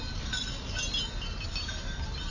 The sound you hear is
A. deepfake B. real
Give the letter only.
B